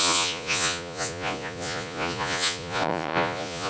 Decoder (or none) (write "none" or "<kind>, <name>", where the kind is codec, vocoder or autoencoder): vocoder, Vocos